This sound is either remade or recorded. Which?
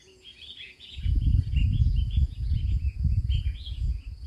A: remade